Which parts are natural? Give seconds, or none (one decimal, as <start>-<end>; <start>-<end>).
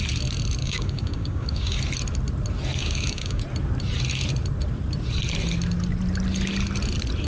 0.0-0.6; 1.8-2.8; 3.4-7.3